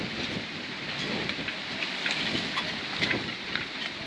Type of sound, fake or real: real